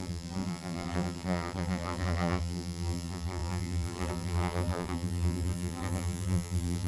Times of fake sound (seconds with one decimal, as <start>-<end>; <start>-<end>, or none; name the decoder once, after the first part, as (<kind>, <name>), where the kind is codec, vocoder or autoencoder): 0.0-6.9 (vocoder, BigVGAN v2)